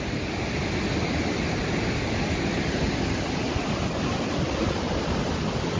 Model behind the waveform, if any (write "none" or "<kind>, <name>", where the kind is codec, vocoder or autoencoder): none